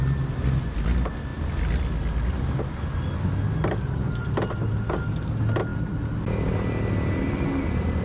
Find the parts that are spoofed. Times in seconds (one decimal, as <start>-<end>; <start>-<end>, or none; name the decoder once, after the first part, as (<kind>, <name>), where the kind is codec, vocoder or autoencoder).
none